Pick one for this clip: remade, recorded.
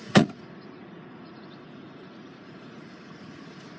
remade